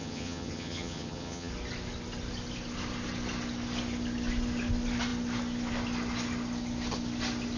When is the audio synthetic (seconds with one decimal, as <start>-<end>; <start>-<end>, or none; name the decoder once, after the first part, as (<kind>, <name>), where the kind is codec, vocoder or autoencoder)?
0.0-1.5 (vocoder, HiFi-GAN)